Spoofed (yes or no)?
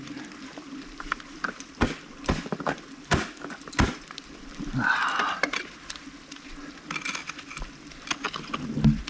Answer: no